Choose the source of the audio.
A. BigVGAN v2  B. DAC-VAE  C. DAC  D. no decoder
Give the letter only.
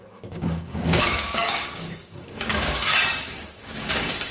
C